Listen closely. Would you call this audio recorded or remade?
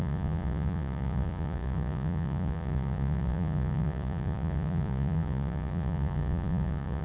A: remade